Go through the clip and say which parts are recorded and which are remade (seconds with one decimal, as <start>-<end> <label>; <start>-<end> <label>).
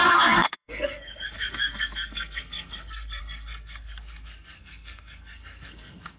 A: 0.0-6.2 remade